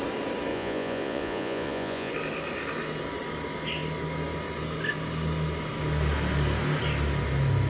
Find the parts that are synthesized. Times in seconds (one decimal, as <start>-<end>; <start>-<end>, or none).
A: 0.5-2.1